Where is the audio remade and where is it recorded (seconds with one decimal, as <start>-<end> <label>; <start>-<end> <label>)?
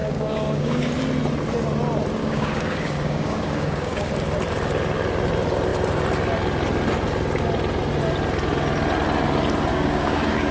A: 0.0-0.9 remade; 0.9-2.2 recorded; 2.2-4.1 remade; 4.1-9.7 recorded; 9.7-10.5 remade